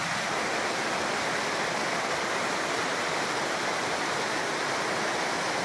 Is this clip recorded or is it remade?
recorded